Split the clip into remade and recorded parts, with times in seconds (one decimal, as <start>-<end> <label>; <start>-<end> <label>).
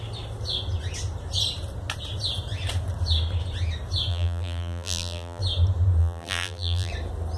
0.0-4.1 recorded; 4.1-5.4 remade; 5.4-6.0 recorded; 6.0-6.9 remade; 6.9-7.4 recorded